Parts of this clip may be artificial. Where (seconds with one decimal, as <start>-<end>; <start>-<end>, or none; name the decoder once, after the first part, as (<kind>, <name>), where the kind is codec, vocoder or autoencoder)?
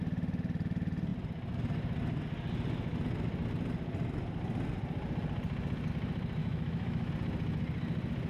6.4-7.1 (autoencoder, DAC-VAE)